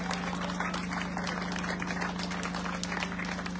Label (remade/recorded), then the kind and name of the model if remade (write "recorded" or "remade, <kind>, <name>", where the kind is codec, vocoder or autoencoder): recorded